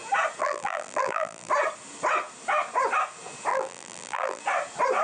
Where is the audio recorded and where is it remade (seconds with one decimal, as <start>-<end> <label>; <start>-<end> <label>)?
0.0-0.4 recorded; 0.4-1.5 remade; 1.5-3.5 recorded; 3.5-4.4 remade; 4.4-5.0 recorded